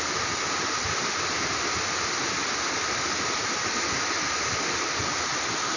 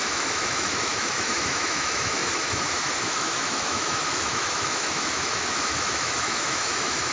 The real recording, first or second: first